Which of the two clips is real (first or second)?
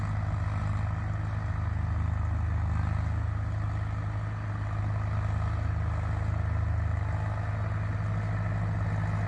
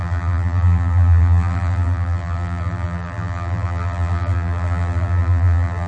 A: first